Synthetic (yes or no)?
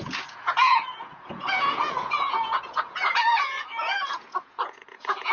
yes